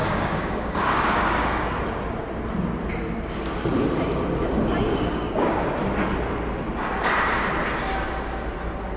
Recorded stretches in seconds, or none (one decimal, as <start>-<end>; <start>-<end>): 1.8-4.9; 5.7-9.0